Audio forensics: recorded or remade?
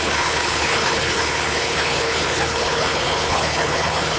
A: remade